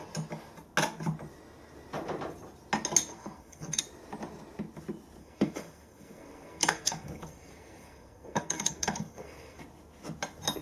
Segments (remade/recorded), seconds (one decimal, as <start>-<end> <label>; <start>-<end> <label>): 0.0-3.1 recorded; 3.1-3.8 remade; 3.8-5.2 recorded; 5.2-9.6 remade; 9.6-10.6 recorded